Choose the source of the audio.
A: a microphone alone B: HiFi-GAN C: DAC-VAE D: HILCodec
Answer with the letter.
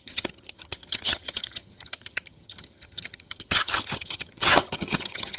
B